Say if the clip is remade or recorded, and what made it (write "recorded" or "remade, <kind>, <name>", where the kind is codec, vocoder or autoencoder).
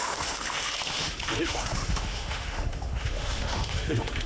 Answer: remade, autoencoder, DAC-VAE